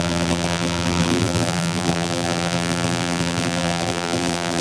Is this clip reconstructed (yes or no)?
yes